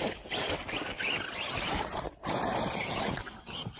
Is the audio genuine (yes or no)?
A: yes